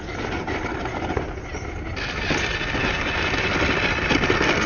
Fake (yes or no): no